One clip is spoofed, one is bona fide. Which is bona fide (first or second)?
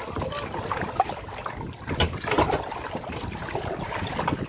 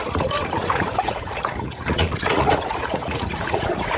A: first